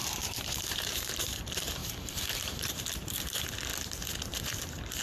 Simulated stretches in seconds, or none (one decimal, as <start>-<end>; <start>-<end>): 0.0-3.7; 4.2-5.0